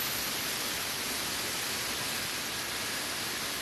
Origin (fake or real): real